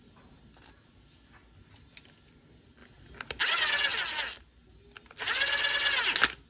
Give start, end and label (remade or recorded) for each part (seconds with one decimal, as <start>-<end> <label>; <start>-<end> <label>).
0.0-2.8 recorded; 2.8-3.4 remade; 3.4-3.9 recorded; 3.9-5.7 remade; 5.7-6.5 recorded